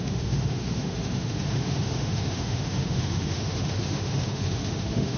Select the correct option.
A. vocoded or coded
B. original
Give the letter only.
A